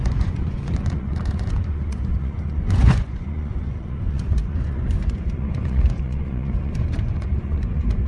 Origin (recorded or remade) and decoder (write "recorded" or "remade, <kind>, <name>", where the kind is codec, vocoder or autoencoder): remade, vocoder, Vocos